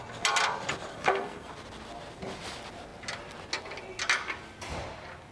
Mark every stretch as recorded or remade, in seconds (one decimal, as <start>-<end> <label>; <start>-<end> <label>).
0.0-0.9 recorded; 0.9-1.5 remade; 1.5-5.3 recorded